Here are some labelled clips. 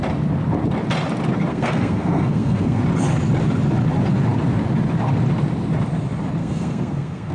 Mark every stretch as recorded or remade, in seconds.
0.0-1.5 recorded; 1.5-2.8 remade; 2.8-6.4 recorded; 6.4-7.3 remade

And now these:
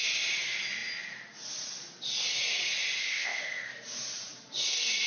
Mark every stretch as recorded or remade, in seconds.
0.0-3.0 recorded; 3.0-3.7 remade; 3.7-5.1 recorded